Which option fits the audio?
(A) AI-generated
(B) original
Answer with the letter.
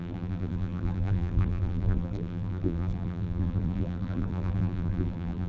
A